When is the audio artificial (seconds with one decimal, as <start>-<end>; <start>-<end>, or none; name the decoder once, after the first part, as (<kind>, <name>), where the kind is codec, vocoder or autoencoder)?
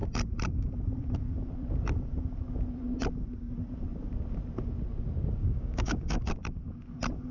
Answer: 5.4-6.3 (codec, DAC)